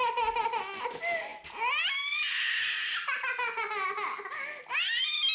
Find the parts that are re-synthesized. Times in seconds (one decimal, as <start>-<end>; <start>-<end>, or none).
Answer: none